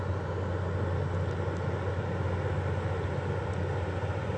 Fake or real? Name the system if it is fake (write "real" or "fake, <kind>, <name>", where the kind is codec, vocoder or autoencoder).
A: real